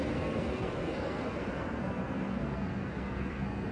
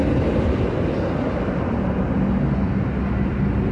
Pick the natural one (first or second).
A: second